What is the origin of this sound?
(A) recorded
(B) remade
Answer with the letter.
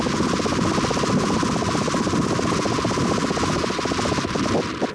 A